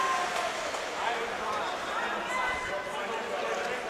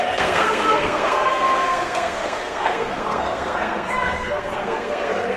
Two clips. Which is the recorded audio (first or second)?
first